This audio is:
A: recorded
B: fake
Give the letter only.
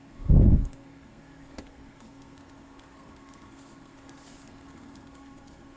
B